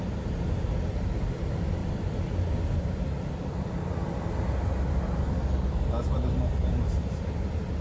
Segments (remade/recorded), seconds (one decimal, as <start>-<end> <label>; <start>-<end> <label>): 0.0-7.8 recorded